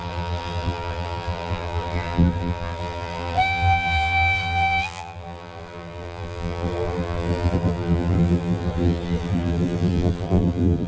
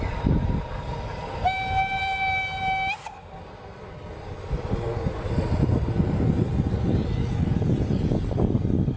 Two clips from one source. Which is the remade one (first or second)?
first